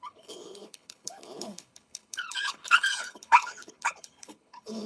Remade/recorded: remade